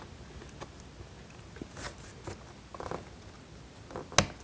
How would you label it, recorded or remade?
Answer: recorded